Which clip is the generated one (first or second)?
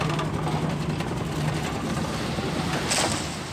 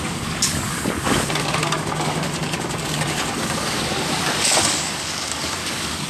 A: second